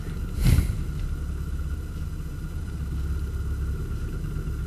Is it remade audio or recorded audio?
recorded